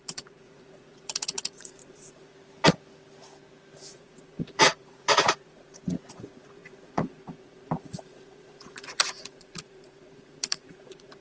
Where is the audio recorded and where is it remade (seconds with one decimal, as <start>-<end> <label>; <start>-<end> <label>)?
0.0-2.3 remade; 2.3-3.9 recorded; 3.9-11.2 remade